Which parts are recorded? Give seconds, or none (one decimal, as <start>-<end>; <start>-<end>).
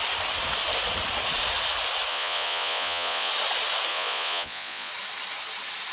0.0-2.1; 3.3-3.9; 4.9-5.9